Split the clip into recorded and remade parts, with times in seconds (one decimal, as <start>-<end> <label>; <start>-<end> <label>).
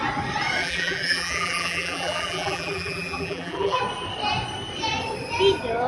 0.0-0.6 recorded; 0.6-3.8 remade; 3.8-5.9 recorded